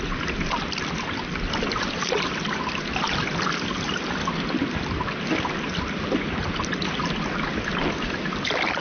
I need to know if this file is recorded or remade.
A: recorded